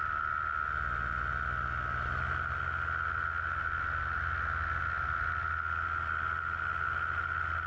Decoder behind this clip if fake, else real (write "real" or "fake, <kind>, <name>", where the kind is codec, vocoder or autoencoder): real